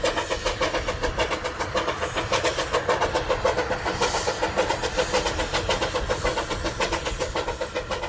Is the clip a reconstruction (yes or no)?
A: no